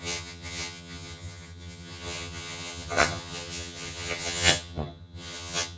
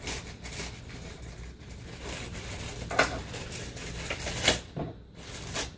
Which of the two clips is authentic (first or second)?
second